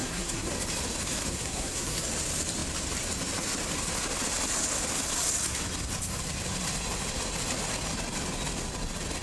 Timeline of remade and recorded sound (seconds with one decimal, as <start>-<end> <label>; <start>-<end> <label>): 0.0-0.5 remade; 0.5-1.2 recorded; 1.2-2.1 remade; 2.1-9.2 recorded